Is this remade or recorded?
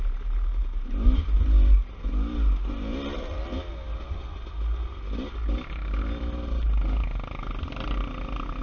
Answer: recorded